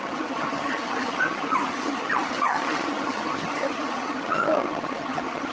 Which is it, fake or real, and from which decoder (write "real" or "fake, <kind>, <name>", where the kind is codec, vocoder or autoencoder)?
fake, vocoder, HiFi-GAN